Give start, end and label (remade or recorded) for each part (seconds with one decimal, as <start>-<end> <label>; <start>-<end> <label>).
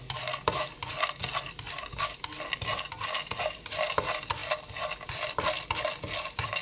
0.0-6.6 recorded